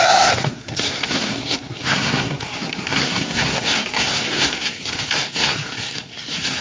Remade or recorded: remade